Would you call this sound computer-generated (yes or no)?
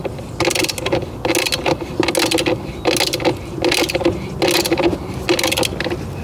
no